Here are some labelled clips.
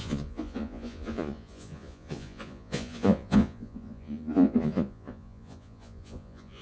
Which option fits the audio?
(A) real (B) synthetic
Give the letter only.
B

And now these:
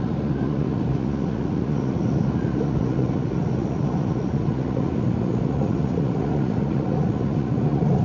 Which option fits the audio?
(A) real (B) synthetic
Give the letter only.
B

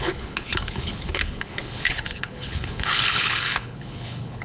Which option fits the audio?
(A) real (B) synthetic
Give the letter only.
B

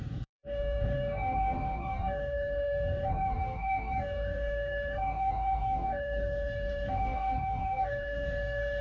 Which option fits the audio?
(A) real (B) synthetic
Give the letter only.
B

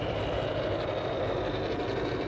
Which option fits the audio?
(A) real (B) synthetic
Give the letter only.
B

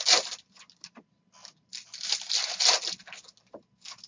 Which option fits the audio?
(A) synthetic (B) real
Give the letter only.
B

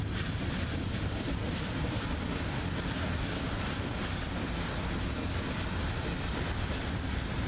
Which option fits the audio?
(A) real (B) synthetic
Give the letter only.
B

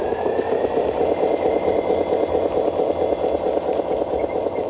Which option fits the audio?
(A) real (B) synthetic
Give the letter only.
A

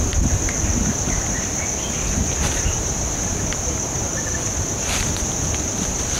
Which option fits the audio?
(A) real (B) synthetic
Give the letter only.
A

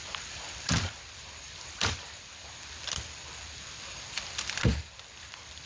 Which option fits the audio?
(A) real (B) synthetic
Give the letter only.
B